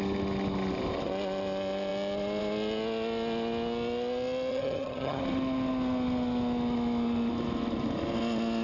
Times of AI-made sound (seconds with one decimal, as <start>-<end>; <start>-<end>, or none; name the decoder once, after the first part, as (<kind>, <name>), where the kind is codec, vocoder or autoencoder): 4.5-5.2 (vocoder, HiFi-GAN)